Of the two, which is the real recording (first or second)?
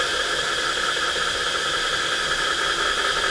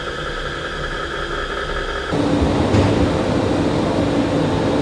second